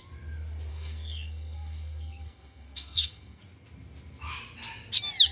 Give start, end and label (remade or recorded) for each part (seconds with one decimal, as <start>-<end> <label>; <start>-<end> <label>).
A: 0.0-0.7 recorded; 0.7-3.4 remade; 3.4-5.3 recorded